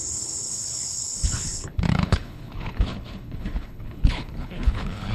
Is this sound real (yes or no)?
no